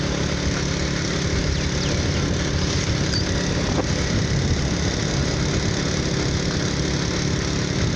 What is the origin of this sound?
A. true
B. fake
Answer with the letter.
A